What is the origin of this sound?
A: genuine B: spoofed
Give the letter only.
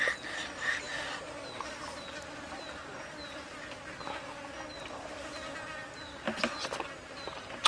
A